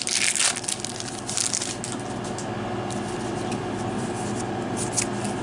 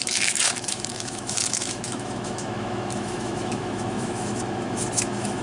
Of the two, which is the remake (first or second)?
second